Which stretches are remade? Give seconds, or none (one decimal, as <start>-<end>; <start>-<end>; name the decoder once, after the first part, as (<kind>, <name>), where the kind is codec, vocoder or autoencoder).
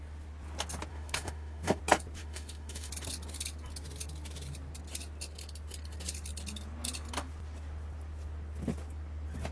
0.9-1.8 (autoencoder, DAC-VAE); 2.2-2.9